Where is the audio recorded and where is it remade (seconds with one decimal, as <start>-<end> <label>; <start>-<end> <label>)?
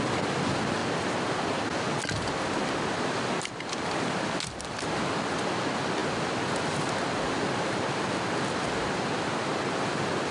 0.0-10.3 recorded